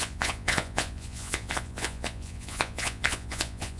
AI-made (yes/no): yes